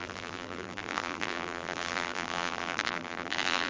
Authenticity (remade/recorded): remade